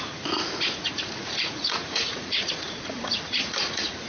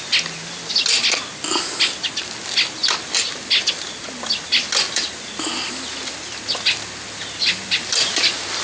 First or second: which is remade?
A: first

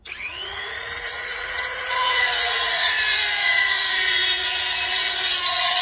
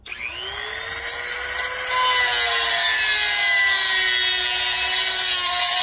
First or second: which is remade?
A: first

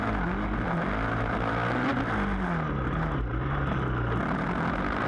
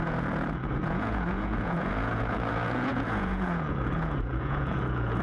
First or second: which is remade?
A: second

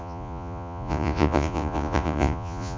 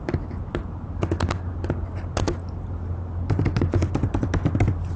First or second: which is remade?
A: first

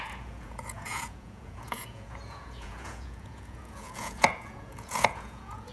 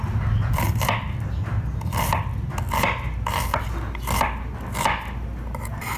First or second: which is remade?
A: first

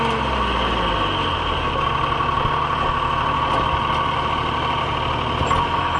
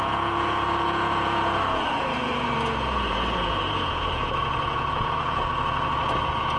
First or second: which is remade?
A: second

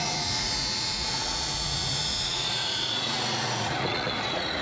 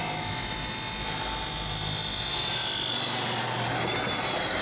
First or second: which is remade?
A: first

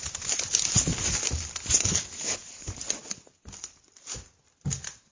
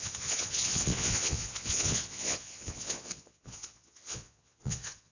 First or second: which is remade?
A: second